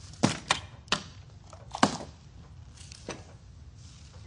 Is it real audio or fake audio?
real